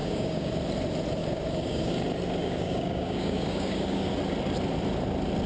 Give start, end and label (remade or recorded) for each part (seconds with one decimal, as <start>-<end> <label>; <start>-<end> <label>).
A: 0.0-0.5 remade; 0.5-1.2 recorded; 1.2-1.9 remade; 1.9-2.4 recorded; 2.4-4.1 remade; 4.1-5.5 recorded